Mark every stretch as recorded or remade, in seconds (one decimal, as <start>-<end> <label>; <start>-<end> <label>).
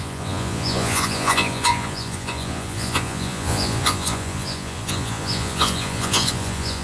0.0-6.8 remade